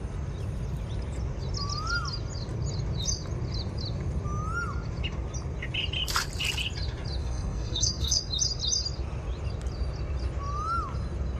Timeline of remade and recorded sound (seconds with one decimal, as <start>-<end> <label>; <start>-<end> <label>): 0.0-7.2 recorded; 7.2-8.2 remade; 8.2-11.4 recorded